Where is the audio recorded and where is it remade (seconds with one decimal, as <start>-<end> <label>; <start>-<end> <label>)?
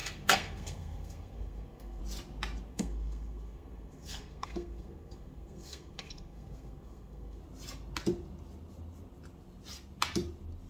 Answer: 0.0-2.0 remade; 2.0-2.7 recorded; 2.7-7.4 remade; 7.4-10.7 recorded